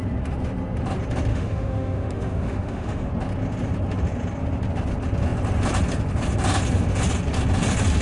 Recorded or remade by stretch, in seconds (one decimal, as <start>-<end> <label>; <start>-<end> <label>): 0.0-1.3 recorded; 1.3-3.1 remade; 3.1-8.0 recorded